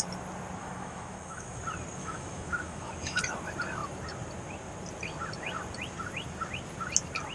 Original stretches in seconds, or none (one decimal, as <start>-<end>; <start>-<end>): 0.0-0.6; 1.6-2.0; 3.2-7.3